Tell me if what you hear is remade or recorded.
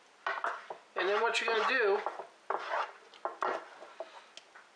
recorded